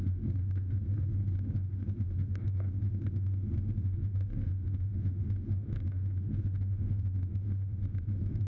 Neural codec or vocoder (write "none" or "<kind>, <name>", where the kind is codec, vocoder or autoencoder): autoencoder, DAC-VAE